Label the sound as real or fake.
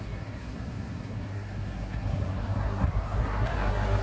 fake